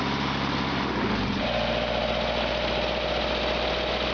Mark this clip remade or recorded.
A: recorded